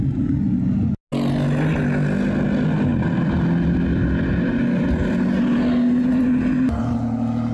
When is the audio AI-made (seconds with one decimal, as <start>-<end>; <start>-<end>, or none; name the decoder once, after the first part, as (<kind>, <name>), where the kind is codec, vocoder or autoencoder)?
none